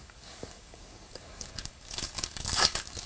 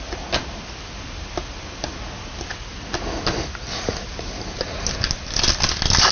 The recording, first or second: second